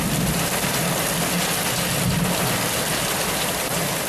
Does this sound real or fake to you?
real